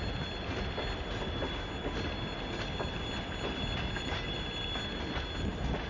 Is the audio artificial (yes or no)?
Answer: no